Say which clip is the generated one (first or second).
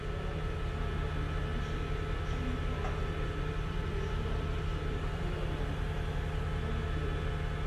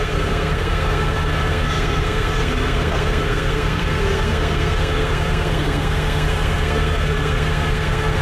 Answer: second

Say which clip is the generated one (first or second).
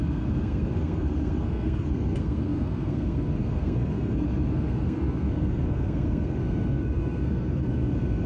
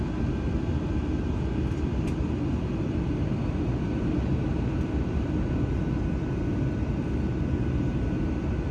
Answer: first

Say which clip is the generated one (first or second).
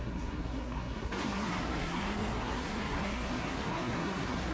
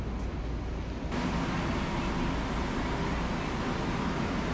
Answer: first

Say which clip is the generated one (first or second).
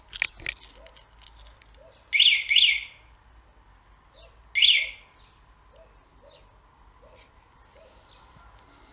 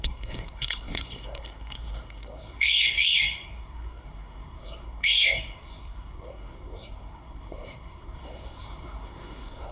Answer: second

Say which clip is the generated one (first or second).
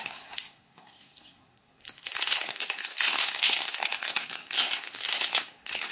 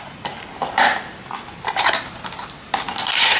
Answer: first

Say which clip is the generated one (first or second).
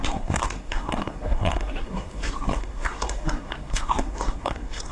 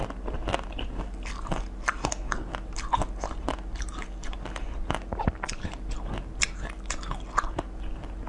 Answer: first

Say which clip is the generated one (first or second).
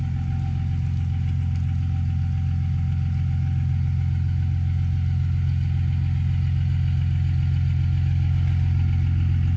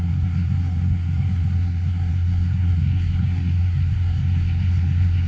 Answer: second